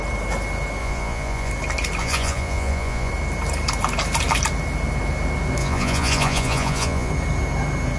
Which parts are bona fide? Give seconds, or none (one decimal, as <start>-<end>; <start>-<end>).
0.0-0.8; 1.5-2.0; 3.1-5.6; 7.1-8.0